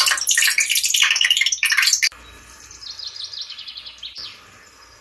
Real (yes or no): no